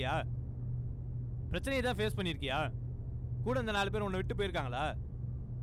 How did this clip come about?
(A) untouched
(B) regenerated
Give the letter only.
A